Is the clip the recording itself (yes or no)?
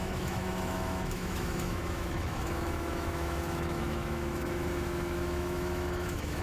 no